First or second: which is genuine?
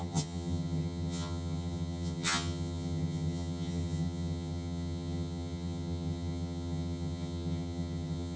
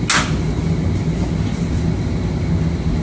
second